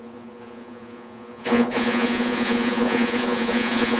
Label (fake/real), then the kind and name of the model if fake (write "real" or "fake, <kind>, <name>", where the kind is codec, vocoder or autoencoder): fake, vocoder, Vocos